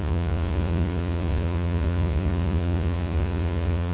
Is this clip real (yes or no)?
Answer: no